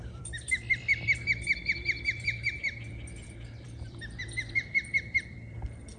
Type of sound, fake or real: fake